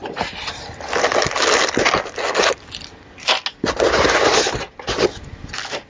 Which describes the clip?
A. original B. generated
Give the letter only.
A